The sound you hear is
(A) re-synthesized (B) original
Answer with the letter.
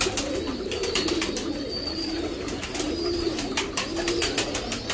B